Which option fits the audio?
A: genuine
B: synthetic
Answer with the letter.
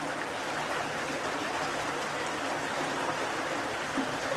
A